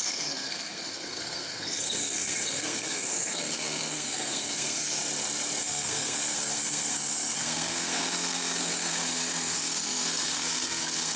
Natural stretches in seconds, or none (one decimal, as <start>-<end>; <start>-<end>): 5.0-5.6